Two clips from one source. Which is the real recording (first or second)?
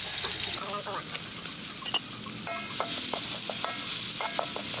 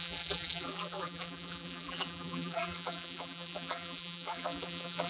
first